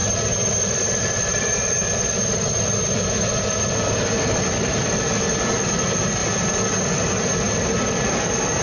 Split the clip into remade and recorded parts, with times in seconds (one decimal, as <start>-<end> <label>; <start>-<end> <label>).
0.0-5.2 remade; 5.2-6.2 recorded; 6.2-8.1 remade; 8.1-8.6 recorded